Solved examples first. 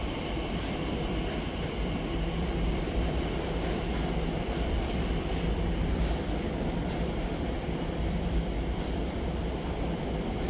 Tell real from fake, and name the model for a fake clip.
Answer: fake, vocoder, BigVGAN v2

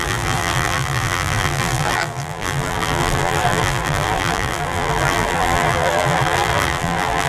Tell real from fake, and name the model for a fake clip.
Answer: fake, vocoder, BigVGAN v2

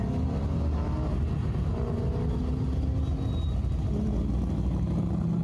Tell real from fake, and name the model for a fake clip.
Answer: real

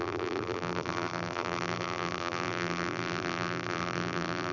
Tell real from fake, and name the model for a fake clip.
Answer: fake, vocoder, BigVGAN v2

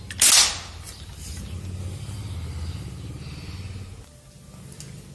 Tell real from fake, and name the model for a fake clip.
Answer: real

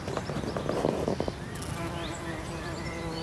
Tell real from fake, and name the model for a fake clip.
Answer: real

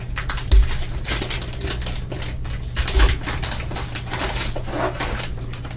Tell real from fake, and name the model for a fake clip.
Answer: real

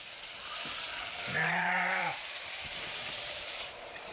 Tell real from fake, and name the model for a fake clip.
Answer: fake, vocoder, BigVGAN v2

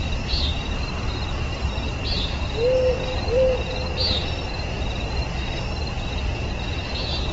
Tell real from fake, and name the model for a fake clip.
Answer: real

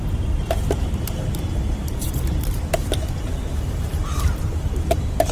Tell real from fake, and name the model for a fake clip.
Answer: fake, vocoder, BigVGAN v2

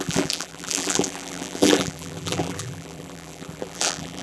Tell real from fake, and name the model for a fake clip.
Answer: fake, vocoder, BigVGAN v2